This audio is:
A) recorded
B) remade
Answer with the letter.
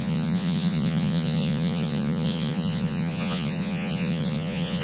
B